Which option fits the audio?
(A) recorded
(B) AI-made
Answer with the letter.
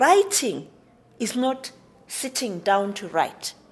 A